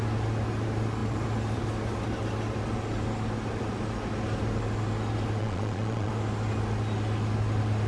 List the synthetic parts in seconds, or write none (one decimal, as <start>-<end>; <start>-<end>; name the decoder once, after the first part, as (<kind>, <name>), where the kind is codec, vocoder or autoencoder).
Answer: 5.4-6.1 (vocoder, Vocos)